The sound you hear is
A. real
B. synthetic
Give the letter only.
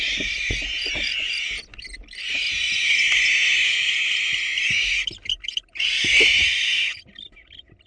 A